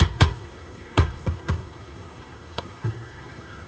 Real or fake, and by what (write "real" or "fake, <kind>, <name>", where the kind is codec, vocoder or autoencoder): fake, codec, SNAC